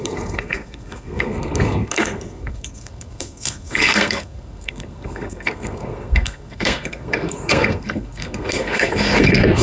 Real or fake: fake